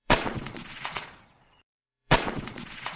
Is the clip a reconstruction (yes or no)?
yes